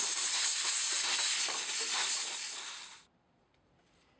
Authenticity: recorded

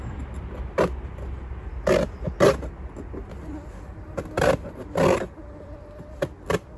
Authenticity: recorded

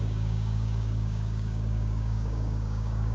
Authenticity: remade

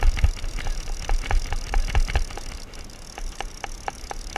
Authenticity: recorded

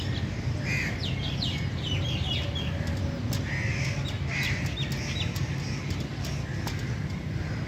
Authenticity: recorded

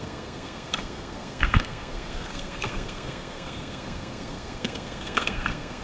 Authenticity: remade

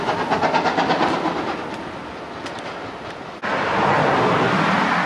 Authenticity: recorded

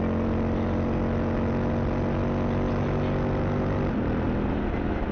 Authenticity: recorded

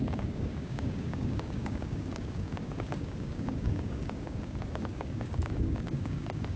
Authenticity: remade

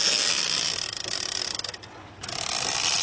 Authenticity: recorded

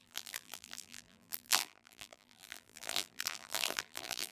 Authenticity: remade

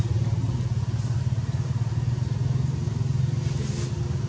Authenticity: recorded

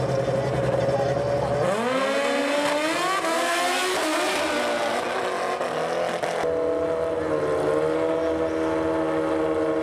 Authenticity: recorded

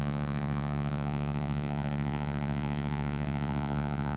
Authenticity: remade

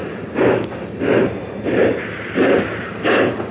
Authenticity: recorded